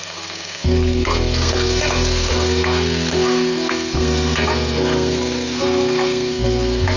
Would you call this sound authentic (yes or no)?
no